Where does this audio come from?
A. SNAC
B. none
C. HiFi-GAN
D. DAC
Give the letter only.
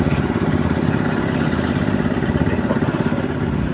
B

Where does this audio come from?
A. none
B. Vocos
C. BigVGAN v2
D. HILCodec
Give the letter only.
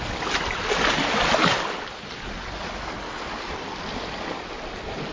A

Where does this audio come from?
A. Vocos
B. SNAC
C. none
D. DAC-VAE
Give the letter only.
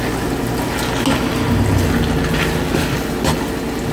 C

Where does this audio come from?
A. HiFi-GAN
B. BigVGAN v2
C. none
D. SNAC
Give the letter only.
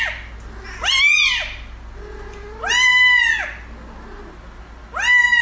C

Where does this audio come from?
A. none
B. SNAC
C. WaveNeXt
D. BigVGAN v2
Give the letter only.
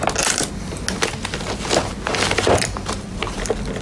A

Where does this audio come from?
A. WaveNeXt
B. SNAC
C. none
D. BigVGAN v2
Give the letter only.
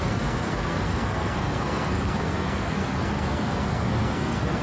B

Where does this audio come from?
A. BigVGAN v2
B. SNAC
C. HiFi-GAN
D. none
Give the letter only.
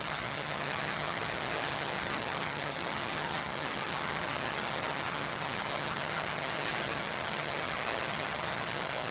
C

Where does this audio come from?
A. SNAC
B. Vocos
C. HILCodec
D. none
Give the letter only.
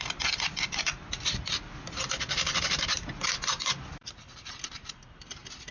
D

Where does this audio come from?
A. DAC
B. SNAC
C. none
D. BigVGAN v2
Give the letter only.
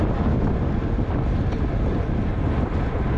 C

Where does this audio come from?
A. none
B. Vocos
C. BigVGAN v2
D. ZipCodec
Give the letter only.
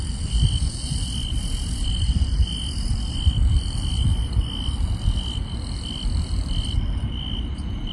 A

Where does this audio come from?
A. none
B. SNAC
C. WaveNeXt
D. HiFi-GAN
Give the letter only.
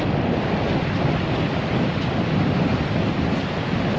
A